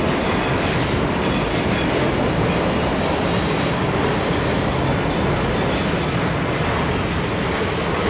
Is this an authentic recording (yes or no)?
yes